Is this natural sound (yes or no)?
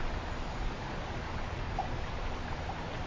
yes